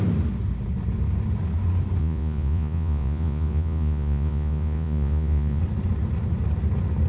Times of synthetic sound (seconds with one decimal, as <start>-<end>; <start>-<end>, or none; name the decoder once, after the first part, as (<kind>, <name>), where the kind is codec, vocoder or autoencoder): 2.0-5.6 (vocoder, Vocos)